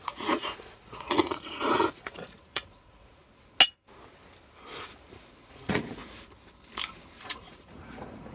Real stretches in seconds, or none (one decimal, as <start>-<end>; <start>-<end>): 3.2-5.5; 6.0-7.2